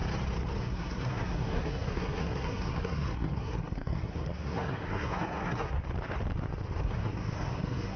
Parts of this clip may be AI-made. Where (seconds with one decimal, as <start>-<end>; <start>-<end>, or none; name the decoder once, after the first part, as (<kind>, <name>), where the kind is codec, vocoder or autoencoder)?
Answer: 0.6-5.8 (codec, SNAC); 6.8-8.0